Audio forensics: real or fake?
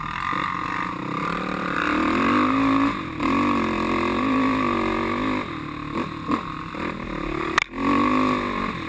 real